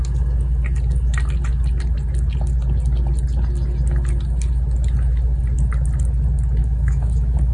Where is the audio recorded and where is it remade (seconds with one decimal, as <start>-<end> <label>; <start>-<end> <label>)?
0.0-6.6 recorded; 6.6-7.5 remade